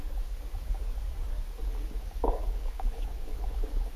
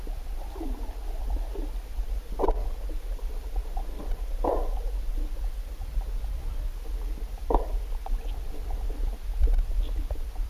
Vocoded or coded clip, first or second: first